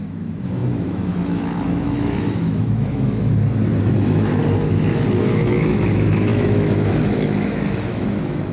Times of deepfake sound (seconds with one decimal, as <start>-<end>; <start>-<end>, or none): 0.0-3.3; 3.8-4.4; 5.2-8.5